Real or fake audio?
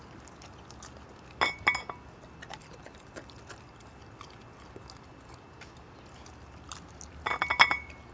real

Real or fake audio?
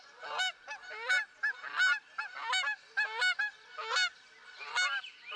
real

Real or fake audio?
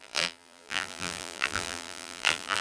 fake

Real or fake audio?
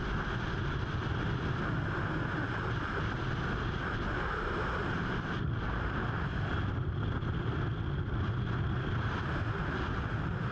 real